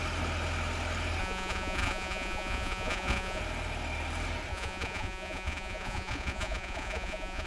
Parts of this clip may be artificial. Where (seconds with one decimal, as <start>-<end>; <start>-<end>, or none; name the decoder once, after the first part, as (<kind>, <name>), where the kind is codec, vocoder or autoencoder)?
1.2-3.4 (vocoder, Vocos); 4.5-7.5